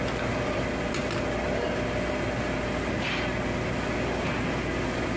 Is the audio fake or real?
real